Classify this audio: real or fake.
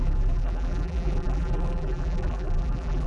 fake